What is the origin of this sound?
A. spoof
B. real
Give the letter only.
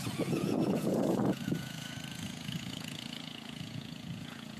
A